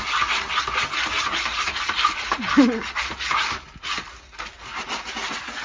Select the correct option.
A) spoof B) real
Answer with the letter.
B